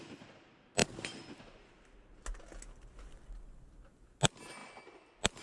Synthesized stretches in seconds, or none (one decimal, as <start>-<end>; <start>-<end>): none